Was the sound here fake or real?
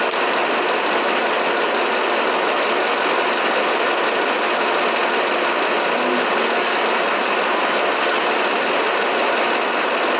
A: real